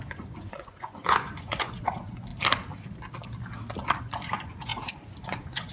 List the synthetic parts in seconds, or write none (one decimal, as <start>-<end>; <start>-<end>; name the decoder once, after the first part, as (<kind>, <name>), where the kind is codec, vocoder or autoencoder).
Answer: 0.0-2.3 (vocoder, Vocos); 4.0-5.7